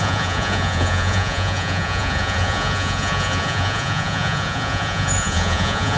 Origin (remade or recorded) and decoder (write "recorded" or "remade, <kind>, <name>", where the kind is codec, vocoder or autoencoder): remade, vocoder, Vocos